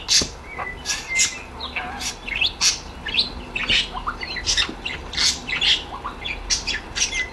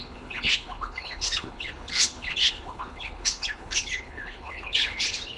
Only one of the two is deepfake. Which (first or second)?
second